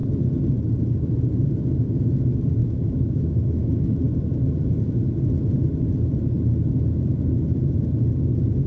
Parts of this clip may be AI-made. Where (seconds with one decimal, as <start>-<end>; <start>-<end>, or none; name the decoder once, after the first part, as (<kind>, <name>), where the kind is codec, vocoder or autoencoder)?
2.6-3.4 (autoencoder, DAC-VAE)